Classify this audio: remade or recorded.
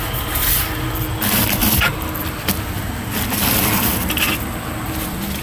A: recorded